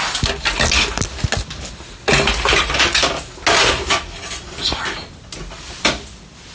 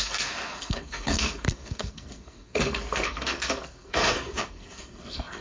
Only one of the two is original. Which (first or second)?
first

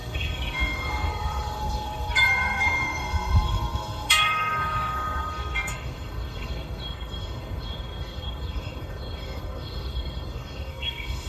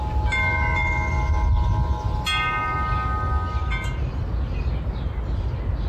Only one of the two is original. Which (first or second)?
second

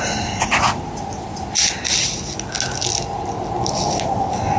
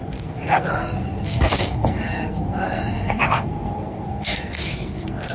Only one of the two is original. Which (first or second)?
first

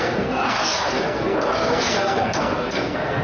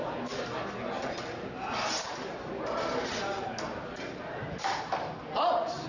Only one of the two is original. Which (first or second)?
second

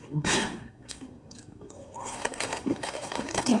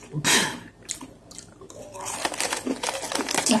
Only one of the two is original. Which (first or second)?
second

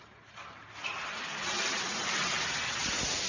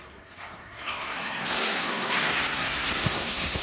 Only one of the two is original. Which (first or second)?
first